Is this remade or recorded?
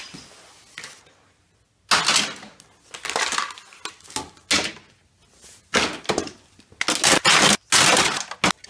recorded